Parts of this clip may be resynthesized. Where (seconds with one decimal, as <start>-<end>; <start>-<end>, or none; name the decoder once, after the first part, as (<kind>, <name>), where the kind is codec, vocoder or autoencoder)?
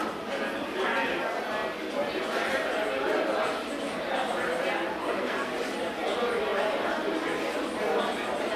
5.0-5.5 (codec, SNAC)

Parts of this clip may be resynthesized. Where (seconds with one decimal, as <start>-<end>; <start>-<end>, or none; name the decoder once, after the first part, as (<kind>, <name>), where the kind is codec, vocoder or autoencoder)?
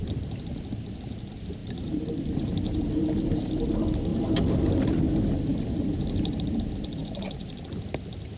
1.6-3.5 (vocoder, BigVGAN v2); 5.5-7.6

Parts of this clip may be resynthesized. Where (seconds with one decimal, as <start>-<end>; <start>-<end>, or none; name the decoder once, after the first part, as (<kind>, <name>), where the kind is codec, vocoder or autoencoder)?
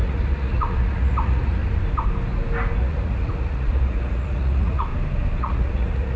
0.0-1.6 (vocoder, Vocos); 2.8-4.9; 5.4-6.2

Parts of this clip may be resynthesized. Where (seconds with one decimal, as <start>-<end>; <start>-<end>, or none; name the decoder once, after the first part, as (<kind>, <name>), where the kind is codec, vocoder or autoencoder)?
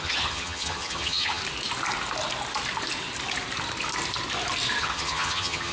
0.0-1.4 (vocoder, HiFi-GAN); 4.8-5.7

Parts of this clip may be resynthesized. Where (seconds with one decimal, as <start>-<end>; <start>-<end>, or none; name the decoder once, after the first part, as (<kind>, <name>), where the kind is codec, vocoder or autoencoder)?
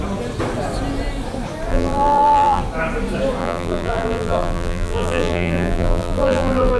1.7-2.6 (vocoder, BigVGAN v2); 3.4-6.8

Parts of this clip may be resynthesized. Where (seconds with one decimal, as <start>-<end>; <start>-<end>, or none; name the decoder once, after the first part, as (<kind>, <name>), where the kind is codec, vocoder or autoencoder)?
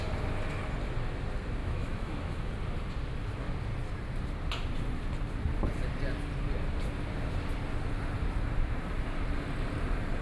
1.6-2.5 (autoencoder, DAC-VAE)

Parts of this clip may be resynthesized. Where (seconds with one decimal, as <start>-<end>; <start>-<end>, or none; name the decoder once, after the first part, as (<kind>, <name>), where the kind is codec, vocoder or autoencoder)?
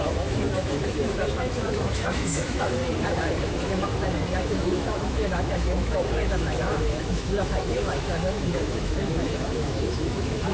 0.0-2.8 (autoencoder, DAC-VAE); 3.4-3.9; 4.4-10.5